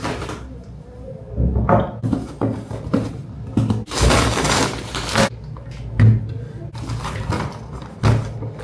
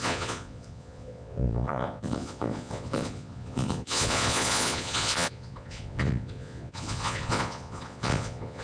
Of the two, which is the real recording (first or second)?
first